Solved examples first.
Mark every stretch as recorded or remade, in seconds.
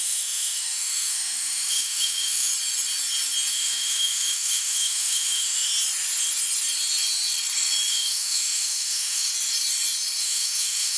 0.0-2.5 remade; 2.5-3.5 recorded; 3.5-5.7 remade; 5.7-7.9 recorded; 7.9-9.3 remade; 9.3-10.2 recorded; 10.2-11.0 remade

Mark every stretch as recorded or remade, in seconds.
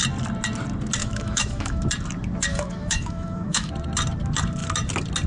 0.0-1.0 recorded; 1.0-1.8 remade; 1.8-2.5 recorded; 2.5-3.7 remade; 3.7-5.3 recorded